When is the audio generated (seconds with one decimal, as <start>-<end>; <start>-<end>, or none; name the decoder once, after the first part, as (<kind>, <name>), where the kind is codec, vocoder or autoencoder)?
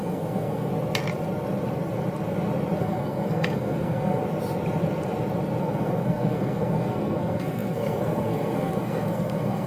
0.0-0.7 (codec, SNAC); 2.8-4.2; 5.6-9.7